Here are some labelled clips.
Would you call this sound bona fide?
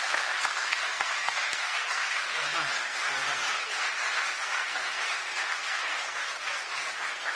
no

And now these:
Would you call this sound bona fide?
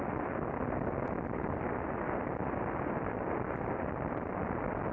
yes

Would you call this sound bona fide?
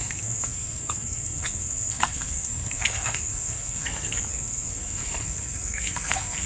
no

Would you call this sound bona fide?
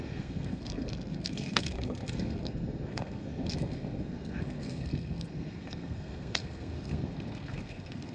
no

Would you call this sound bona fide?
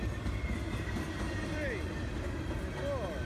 yes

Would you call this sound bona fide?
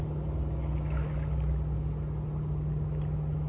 yes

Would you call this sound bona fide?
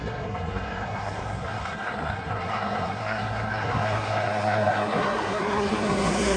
no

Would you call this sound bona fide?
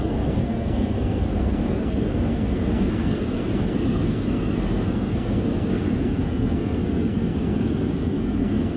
no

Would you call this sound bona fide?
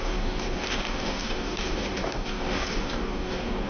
no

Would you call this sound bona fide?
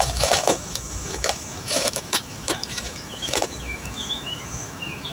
no